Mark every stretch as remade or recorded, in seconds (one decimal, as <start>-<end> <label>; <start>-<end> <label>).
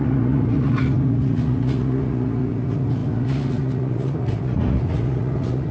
0.0-5.7 remade